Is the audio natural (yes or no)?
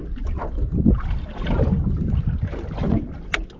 yes